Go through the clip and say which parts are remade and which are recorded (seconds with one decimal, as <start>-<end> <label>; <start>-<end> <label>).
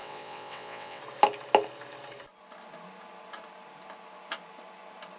0.0-1.0 remade; 1.0-5.2 recorded